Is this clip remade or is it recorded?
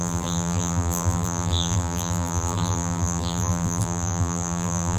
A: remade